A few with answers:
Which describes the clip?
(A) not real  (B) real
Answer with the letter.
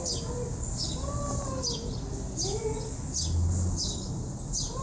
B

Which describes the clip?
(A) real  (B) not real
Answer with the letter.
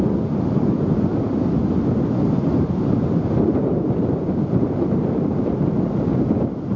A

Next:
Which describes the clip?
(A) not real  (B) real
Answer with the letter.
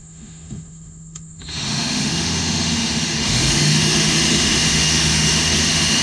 A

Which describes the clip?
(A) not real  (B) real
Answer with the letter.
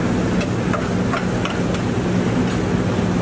B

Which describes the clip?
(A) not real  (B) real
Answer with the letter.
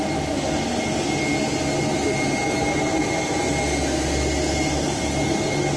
B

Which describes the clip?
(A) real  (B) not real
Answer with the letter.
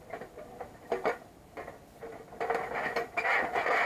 A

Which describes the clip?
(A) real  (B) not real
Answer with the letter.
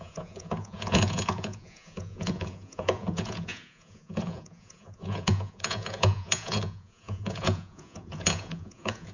B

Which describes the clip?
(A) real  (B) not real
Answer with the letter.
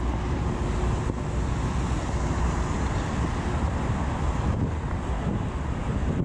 A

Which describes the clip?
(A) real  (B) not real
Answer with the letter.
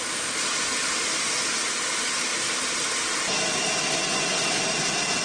A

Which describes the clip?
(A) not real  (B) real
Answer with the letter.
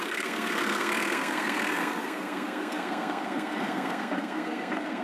A